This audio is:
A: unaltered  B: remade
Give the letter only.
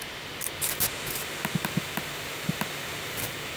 A